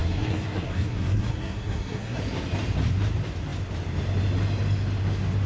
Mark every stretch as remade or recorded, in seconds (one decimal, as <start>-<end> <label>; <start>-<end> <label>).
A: 0.0-2.2 remade; 2.2-5.5 recorded